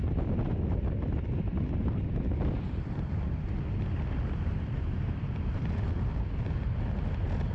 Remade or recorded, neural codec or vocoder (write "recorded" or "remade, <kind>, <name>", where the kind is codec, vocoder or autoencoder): recorded